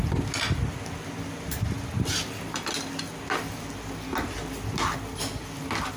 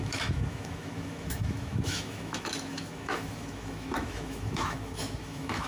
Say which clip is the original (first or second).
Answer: first